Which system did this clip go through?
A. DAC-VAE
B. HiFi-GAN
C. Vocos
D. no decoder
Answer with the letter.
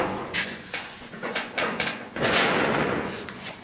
C